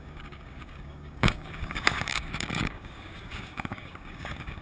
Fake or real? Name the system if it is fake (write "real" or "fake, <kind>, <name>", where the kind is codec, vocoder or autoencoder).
fake, codec, DAC